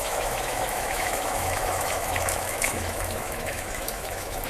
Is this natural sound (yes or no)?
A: no